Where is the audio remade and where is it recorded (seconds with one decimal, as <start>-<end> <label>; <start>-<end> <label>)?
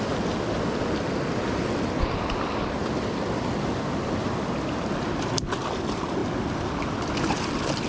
0.0-7.9 recorded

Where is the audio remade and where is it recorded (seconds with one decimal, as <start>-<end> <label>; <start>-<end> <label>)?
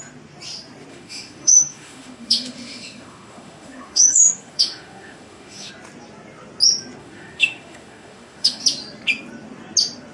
0.0-0.9 recorded; 0.9-5.7 remade; 5.7-7.0 recorded; 7.0-8.6 remade; 8.6-10.1 recorded